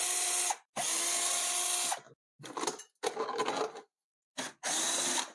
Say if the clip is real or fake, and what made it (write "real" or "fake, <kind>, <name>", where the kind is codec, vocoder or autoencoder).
real